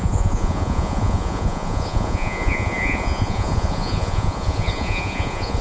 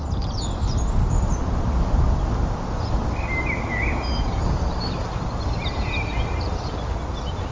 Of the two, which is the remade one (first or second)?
first